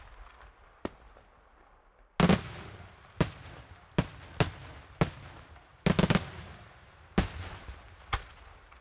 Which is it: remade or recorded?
recorded